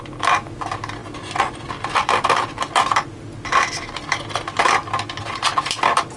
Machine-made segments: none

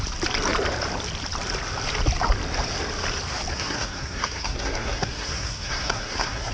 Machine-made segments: 3.5-6.5 (codec, SNAC)

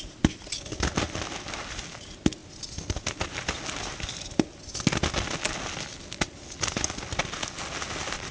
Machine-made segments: none

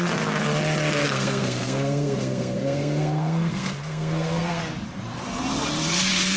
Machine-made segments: 1.0-4.6 (codec, SNAC)

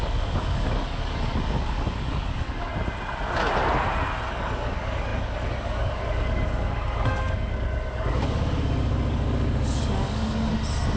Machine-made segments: 0.0-2.7 (codec, DAC); 4.3-10.5

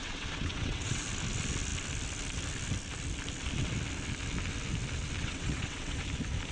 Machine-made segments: 0.0-1.0 (vocoder, WaveNeXt); 5.2-6.0